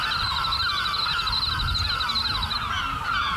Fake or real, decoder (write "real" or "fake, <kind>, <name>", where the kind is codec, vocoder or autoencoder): real